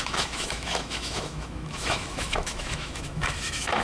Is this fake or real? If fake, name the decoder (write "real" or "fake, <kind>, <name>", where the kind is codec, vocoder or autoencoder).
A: fake, autoencoder, DAC-VAE